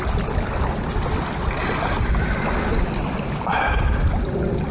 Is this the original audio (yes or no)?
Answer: yes